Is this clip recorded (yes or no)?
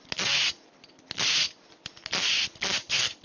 yes